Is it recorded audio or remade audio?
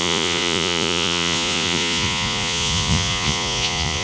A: remade